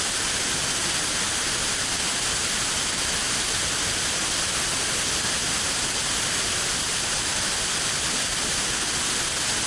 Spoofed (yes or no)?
no